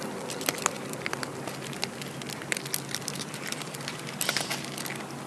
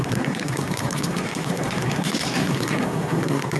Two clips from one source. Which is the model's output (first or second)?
second